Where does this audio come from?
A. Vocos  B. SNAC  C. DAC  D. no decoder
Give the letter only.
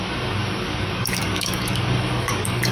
C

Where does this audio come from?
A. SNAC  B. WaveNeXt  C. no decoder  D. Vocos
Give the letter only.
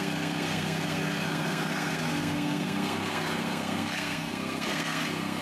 A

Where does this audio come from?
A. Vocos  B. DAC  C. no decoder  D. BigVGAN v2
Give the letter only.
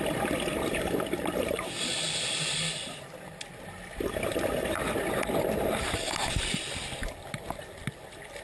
C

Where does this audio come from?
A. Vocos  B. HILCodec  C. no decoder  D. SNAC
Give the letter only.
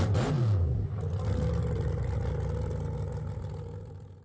C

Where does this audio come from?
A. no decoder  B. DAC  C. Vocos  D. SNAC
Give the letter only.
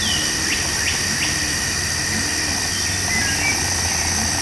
A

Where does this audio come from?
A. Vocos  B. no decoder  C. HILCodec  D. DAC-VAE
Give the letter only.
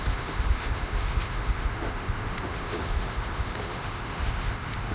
D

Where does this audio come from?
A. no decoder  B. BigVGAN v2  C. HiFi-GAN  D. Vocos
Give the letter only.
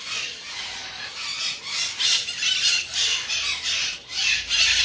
A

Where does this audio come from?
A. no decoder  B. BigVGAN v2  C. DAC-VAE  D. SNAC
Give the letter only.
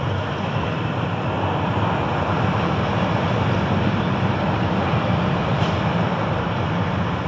B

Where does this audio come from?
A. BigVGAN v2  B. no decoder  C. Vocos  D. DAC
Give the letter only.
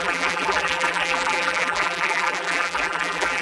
A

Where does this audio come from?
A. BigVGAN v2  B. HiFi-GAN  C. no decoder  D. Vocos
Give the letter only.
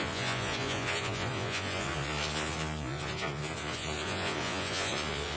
D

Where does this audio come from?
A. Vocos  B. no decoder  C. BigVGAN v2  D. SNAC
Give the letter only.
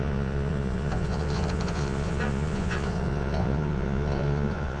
A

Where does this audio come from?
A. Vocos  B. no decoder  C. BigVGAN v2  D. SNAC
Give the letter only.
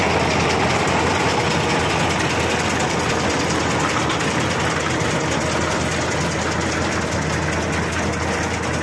B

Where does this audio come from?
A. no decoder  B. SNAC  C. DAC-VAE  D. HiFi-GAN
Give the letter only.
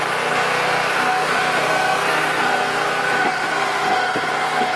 B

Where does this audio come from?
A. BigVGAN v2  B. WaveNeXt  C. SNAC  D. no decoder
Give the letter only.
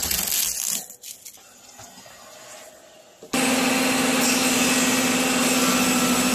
D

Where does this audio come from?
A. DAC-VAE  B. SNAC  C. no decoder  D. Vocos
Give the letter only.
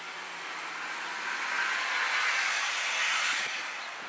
C